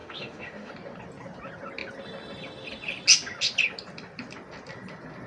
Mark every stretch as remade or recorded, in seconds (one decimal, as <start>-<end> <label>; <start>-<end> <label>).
0.0-0.7 remade; 0.7-5.3 recorded